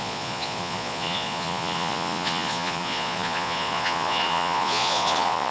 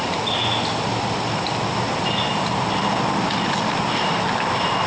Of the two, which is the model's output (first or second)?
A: first